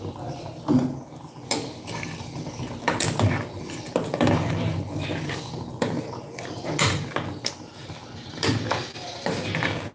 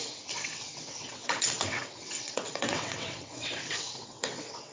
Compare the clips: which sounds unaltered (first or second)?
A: first